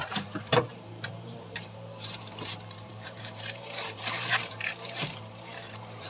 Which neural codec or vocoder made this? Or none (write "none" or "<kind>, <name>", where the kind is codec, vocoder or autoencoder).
vocoder, BigVGAN v2